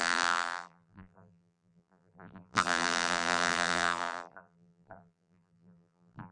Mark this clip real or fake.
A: fake